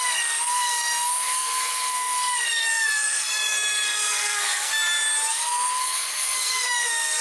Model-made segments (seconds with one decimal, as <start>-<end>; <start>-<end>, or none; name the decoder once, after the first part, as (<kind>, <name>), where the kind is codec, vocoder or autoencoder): 0.0-4.7 (codec, SNAC); 5.3-7.2